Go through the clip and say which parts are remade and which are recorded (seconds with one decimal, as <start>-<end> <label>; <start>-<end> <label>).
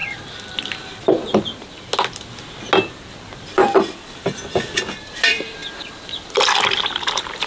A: 0.0-3.1 recorded; 3.1-3.6 remade; 3.6-5.0 recorded; 5.0-5.6 remade; 5.6-6.8 recorded; 6.8-7.5 remade